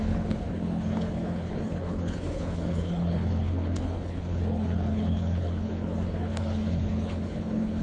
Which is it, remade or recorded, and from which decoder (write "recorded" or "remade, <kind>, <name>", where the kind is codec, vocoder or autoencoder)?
remade, codec, HILCodec